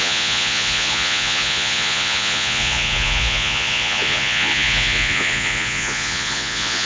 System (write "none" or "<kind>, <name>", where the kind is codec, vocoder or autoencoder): vocoder, Vocos